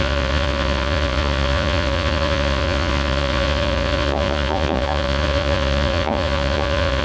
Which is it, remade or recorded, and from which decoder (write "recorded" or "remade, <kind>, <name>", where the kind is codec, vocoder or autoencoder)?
remade, vocoder, Vocos